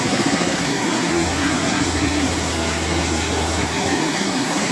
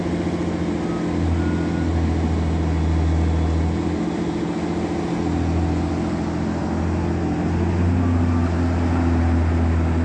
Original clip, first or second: second